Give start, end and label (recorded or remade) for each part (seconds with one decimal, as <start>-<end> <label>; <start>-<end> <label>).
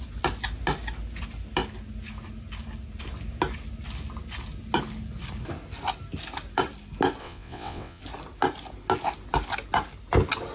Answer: 0.0-7.2 recorded; 7.2-8.0 remade; 8.0-10.5 recorded